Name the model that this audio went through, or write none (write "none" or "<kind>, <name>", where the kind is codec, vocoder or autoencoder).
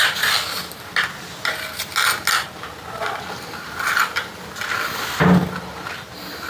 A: none